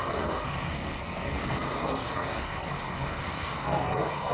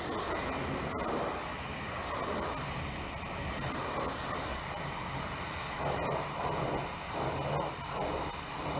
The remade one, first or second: first